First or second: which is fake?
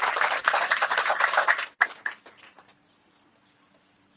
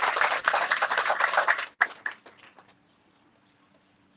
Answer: second